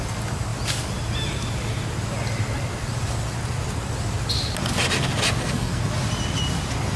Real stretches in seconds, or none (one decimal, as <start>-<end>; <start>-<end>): 0.0-5.4; 5.9-7.0